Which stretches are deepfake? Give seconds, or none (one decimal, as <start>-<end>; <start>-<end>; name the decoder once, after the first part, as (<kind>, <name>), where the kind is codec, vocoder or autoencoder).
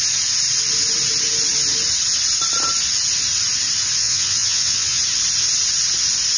4.0-5.0 (vocoder, WaveNeXt)